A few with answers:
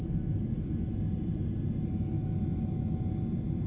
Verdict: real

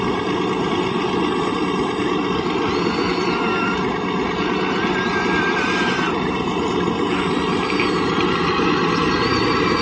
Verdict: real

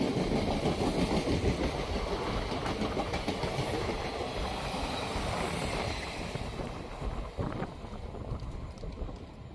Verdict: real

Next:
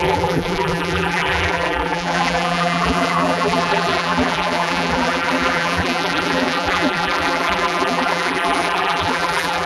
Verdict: fake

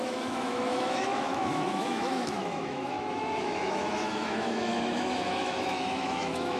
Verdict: fake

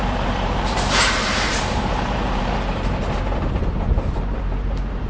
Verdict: fake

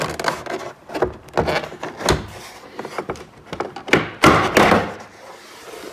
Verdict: real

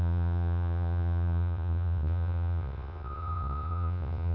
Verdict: fake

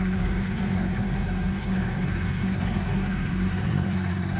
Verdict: fake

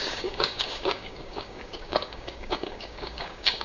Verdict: fake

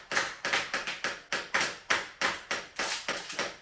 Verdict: real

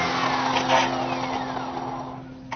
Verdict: real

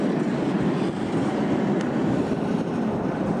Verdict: real